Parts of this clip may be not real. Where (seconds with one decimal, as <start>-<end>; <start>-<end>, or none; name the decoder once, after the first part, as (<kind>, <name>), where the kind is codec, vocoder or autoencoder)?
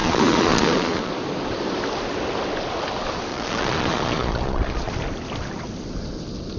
0.0-1.1 (vocoder, Vocos); 3.3-4.9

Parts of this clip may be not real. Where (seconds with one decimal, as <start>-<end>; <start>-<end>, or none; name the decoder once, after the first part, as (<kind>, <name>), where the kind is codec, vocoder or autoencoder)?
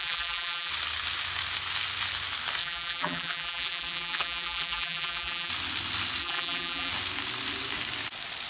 0.0-0.7 (vocoder, BigVGAN v2); 2.6-5.5; 6.2-6.9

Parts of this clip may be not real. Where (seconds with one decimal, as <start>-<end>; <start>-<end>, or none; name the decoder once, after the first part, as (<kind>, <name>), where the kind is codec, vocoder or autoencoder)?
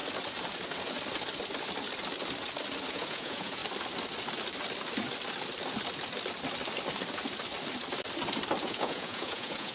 2.9-3.6 (vocoder, Vocos); 8.6-9.7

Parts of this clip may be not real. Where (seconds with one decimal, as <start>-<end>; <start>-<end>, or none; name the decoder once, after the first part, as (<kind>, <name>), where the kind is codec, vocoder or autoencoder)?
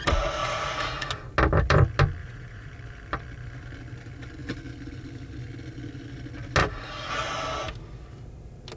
0.4-1.1 (vocoder, Vocos); 2.2-2.7; 6.6-7.1